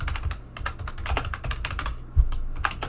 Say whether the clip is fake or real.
real